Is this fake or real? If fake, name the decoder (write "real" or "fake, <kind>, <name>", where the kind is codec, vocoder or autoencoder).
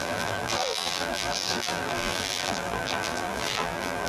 fake, vocoder, BigVGAN v2